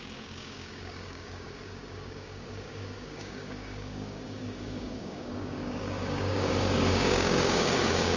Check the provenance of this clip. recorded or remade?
remade